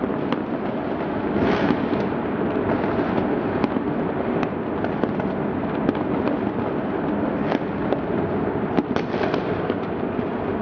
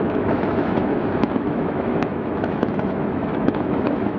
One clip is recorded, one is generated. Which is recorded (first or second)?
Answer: first